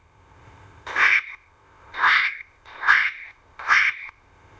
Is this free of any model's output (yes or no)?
no